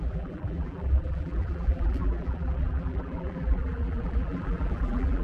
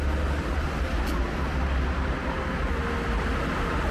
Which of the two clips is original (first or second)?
second